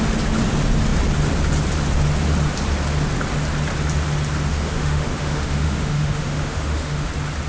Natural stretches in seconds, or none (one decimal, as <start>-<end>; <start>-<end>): 0.0-4.5; 7.1-7.5